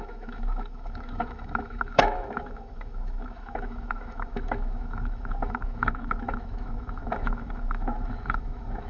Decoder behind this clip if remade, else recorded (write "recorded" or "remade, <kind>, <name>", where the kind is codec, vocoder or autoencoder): remade, autoencoder, DAC-VAE